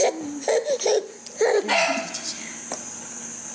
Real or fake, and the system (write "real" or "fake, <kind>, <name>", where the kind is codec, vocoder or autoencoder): real